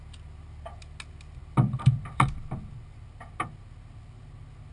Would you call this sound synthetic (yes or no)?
no